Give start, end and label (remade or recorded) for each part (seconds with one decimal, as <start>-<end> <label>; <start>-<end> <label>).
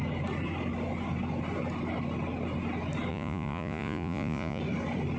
0.0-3.1 recorded; 3.1-4.6 remade; 4.6-5.2 recorded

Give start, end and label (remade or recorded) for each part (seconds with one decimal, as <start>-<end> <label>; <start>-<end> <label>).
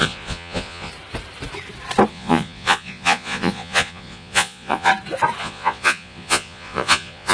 0.0-0.9 remade; 0.9-2.1 recorded; 2.1-4.9 remade; 4.9-5.4 recorded; 5.4-7.3 remade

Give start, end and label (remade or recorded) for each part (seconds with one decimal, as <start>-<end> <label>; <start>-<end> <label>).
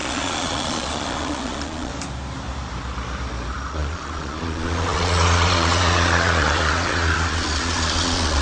0.0-1.9 remade; 1.9-3.7 recorded; 3.7-8.4 remade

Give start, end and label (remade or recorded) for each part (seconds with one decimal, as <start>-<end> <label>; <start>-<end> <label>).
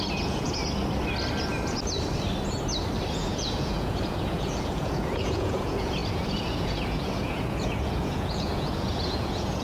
0.0-0.6 remade; 0.6-3.1 recorded; 3.1-9.6 remade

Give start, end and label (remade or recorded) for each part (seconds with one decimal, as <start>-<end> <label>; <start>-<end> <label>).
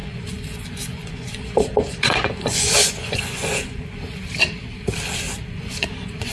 0.0-4.2 remade; 4.2-5.5 recorded; 5.5-6.3 remade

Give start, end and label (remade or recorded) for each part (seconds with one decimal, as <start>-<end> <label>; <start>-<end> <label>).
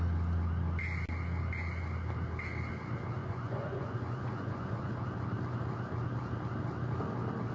0.0-3.2 recorded; 3.2-4.9 remade; 4.9-7.5 recorded